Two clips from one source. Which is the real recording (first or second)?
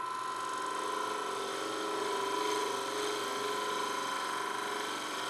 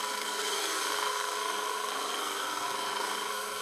first